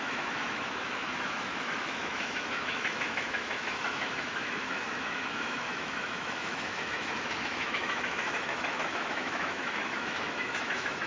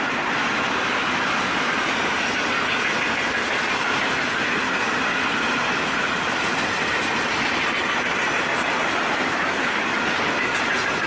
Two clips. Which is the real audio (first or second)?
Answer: second